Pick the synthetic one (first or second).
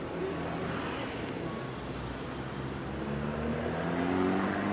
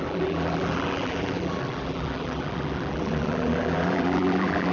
second